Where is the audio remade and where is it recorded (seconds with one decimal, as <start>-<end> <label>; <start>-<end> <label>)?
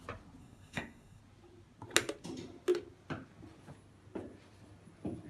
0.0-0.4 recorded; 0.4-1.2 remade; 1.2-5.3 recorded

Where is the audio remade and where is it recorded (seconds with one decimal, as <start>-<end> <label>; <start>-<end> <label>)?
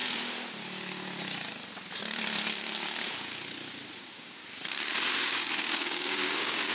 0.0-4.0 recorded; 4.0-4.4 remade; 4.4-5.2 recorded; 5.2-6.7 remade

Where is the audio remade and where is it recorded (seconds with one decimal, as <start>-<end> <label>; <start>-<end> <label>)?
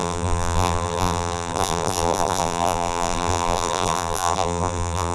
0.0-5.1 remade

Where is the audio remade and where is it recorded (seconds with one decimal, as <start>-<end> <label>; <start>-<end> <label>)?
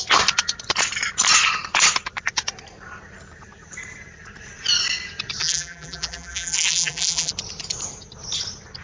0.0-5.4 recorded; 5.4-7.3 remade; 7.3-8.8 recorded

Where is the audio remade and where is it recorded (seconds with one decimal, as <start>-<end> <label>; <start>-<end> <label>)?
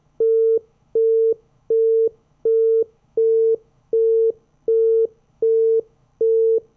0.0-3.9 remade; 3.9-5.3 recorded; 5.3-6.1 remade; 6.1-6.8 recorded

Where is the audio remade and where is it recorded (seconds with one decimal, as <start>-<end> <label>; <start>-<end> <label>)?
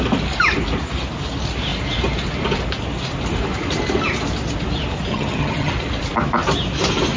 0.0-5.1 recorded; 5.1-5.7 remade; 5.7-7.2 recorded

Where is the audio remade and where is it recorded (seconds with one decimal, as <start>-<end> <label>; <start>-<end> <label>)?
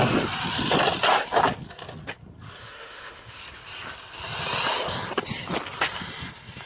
0.0-2.6 recorded; 2.6-3.4 remade; 3.4-6.7 recorded